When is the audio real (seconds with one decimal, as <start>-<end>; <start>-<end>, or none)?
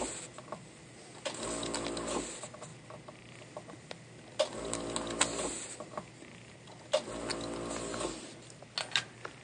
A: 0.0-9.4